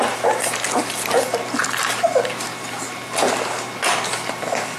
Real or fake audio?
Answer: real